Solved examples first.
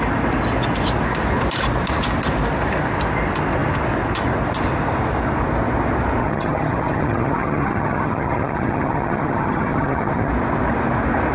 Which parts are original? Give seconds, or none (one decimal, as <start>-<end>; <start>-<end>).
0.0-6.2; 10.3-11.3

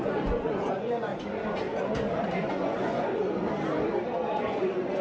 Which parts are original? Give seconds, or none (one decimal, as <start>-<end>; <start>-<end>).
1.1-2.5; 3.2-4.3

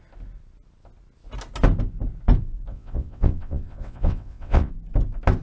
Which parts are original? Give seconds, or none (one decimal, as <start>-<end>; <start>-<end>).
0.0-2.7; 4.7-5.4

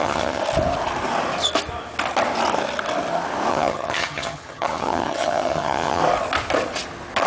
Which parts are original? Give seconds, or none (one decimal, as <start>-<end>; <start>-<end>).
0.4-3.5; 6.0-7.3

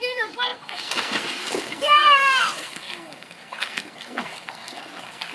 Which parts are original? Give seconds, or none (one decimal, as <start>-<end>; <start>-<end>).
none

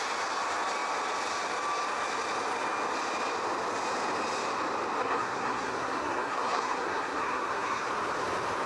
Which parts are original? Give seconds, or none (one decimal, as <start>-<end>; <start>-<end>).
0.0-5.0; 7.9-8.7